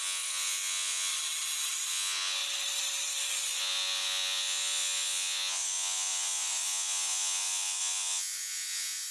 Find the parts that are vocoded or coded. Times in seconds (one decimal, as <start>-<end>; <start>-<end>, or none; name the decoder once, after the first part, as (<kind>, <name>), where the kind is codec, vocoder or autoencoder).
0.0-1.1 (vocoder, Vocos); 1.9-2.4; 3.6-9.1